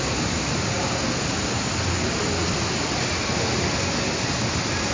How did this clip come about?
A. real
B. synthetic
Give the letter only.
A